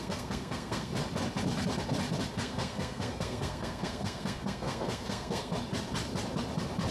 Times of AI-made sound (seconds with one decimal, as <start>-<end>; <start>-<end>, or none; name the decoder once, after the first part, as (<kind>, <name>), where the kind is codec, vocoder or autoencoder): 0.0-0.9 (codec, SNAC); 2.3-5.5